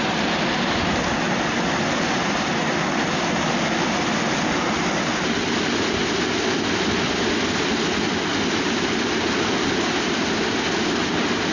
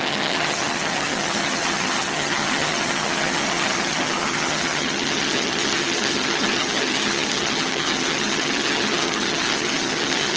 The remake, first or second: second